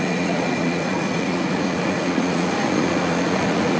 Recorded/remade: remade